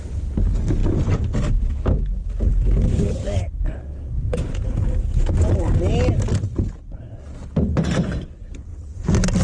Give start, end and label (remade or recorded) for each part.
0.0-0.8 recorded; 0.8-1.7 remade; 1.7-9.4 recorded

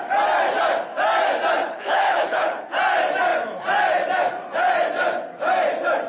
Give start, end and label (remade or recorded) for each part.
0.0-1.6 recorded; 1.6-2.6 remade; 2.6-6.1 recorded

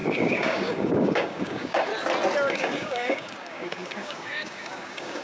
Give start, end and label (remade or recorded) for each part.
0.0-1.9 remade; 1.9-2.5 recorded; 2.5-5.2 remade

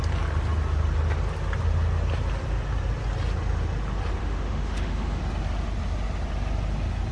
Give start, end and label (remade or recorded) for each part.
0.0-4.2 recorded; 4.2-5.2 remade; 5.2-7.1 recorded

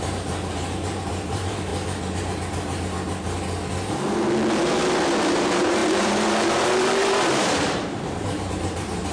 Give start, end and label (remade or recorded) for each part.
0.0-1.7 remade; 1.7-5.3 recorded; 5.3-9.1 remade

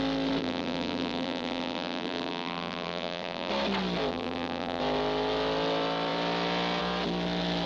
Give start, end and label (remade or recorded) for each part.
0.0-0.4 recorded; 0.4-3.5 remade; 3.5-4.1 recorded; 4.1-4.8 remade; 4.8-7.7 recorded

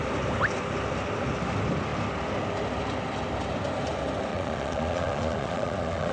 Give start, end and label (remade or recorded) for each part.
0.0-4.3 recorded; 4.3-6.1 remade

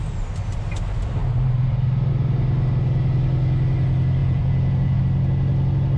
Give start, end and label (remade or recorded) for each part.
0.0-4.2 recorded; 4.2-5.0 remade; 5.0-6.0 recorded